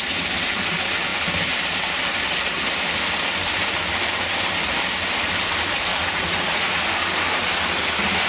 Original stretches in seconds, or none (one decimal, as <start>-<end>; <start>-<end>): 0.0-5.9; 6.8-8.3